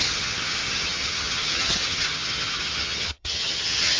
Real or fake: fake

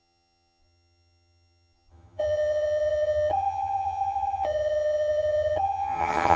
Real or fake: fake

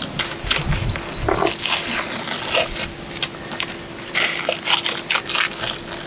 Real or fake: real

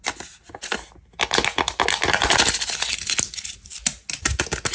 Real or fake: real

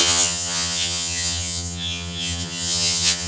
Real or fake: fake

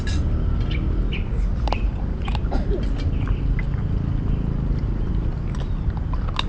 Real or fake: real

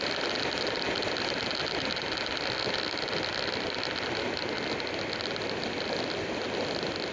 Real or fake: real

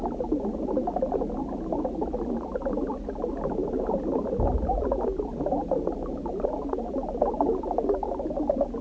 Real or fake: real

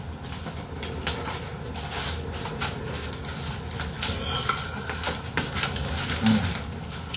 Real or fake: real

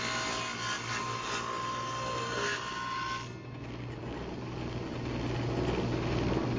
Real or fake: real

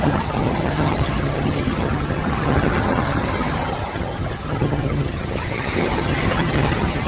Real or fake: fake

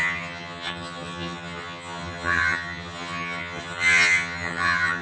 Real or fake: fake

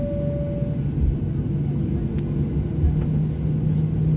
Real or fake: real